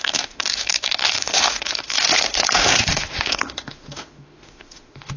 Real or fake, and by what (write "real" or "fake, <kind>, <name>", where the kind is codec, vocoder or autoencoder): fake, autoencoder, DAC-VAE